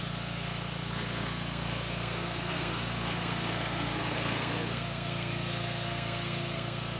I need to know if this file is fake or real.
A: fake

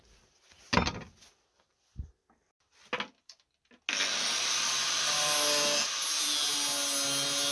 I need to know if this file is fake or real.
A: real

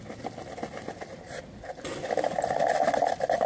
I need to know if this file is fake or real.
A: real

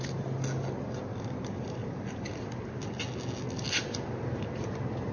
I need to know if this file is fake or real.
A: real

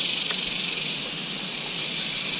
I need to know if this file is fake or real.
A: real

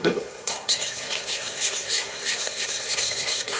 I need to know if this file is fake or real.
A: fake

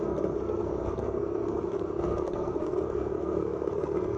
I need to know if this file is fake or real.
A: fake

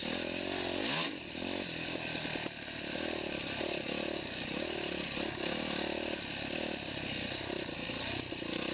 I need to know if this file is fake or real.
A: real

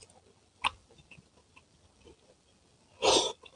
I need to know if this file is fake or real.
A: real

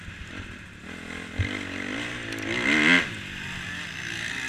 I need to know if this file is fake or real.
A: real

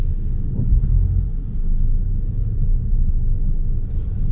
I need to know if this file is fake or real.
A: real